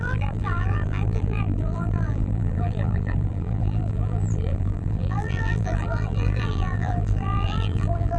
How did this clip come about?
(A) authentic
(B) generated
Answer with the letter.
B